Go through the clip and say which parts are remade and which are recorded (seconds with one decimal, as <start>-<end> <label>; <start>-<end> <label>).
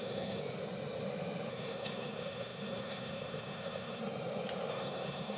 0.0-0.4 remade; 0.4-1.5 recorded; 1.5-4.0 remade; 4.0-4.7 recorded; 4.7-5.4 remade